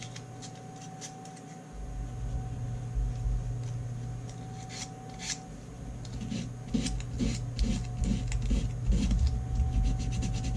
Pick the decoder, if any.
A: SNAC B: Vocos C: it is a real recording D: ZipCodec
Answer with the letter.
C